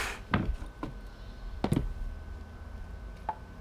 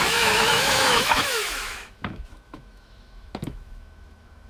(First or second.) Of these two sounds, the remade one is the second